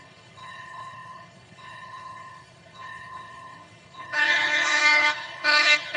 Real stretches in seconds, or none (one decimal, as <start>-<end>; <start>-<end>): none

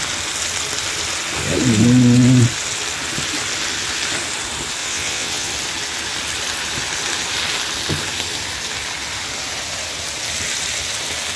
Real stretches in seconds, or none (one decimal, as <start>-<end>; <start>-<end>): 0.0-4.8; 5.5-11.4

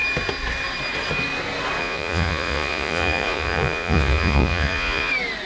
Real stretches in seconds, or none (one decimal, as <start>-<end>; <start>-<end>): 0.0-1.8; 5.1-5.5

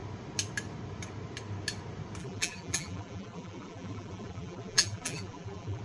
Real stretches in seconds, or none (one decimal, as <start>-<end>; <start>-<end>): 0.0-2.2

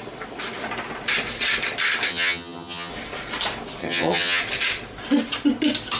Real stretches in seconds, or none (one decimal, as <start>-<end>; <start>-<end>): 0.0-2.1; 2.9-3.8; 4.4-6.0

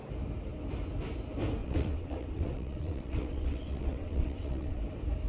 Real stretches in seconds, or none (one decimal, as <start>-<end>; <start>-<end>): 0.0-1.6; 4.8-5.3

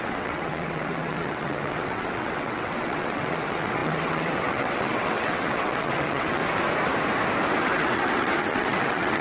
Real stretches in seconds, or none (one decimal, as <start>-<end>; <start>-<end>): 6.4-7.6